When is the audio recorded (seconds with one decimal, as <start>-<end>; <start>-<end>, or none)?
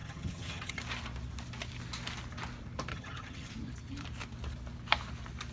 0.8-2.9; 3.5-5.5